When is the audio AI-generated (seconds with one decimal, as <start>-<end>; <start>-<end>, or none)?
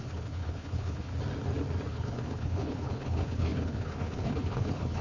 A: 0.0-1.1; 1.9-5.0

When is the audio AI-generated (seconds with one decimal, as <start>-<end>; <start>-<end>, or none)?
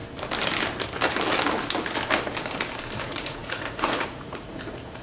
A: 3.0-5.0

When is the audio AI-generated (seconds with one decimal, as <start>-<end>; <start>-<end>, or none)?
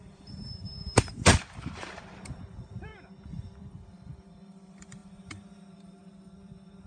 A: 0.0-1.1; 1.8-2.9; 3.6-6.9